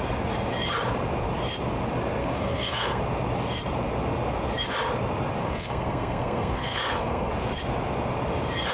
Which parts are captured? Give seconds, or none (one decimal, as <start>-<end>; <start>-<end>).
0.0-2.2; 3.0-5.4; 7.3-8.7